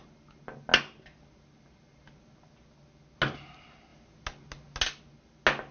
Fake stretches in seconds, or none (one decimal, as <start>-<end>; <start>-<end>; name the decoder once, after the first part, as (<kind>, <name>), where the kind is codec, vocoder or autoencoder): none